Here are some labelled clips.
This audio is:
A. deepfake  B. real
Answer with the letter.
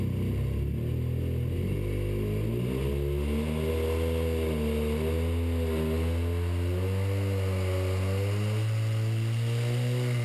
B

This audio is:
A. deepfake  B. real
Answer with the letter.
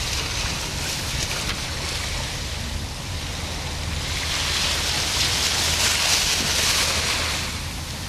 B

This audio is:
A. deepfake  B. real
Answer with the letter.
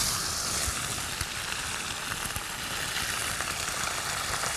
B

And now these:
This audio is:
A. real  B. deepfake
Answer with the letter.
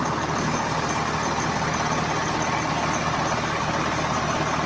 A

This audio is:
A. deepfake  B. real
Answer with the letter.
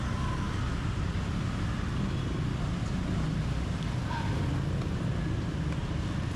B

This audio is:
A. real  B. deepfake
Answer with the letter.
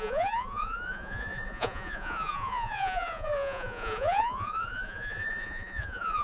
B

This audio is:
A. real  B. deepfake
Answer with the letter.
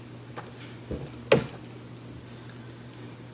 A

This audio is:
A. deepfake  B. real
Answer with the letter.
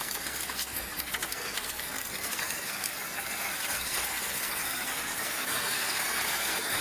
A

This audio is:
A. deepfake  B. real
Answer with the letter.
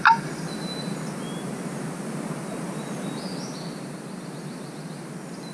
B